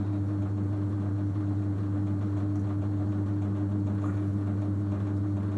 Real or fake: real